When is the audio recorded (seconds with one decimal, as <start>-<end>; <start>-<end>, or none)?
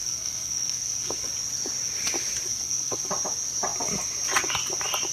1.3-2.5; 3.1-5.1